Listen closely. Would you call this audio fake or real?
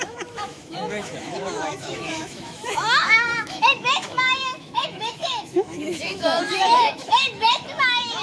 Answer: fake